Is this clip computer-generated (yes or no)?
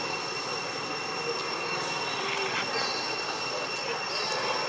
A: no